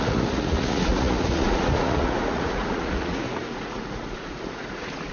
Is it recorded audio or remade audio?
remade